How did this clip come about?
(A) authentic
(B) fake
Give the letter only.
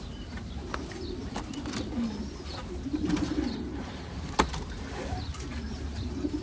A